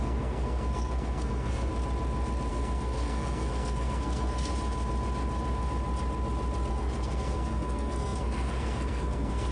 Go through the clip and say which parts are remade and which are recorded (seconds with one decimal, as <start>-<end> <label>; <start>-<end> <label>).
0.0-1.7 remade; 1.7-2.5 recorded; 2.5-4.5 remade; 4.5-6.7 recorded; 6.7-9.5 remade